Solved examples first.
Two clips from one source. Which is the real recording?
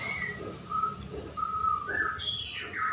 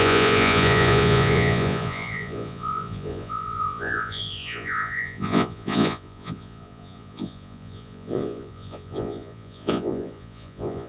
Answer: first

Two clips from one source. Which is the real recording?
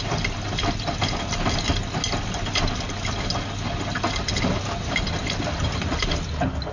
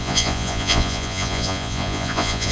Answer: first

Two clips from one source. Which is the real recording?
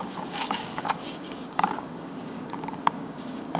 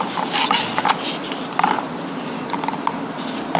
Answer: second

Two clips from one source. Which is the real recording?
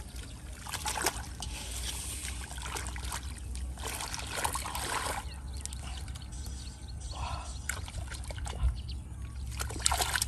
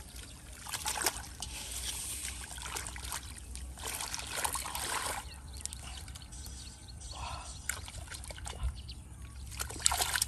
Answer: first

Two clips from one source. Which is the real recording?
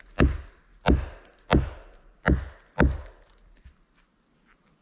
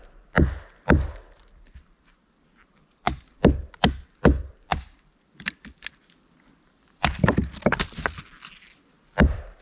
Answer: first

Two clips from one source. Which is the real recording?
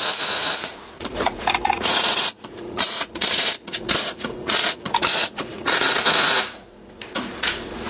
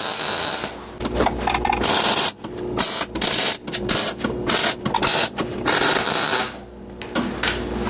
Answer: second